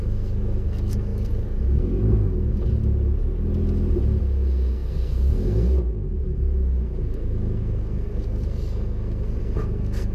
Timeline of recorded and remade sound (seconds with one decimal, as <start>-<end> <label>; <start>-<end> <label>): 0.0-2.7 remade; 2.7-4.2 recorded; 4.2-10.1 remade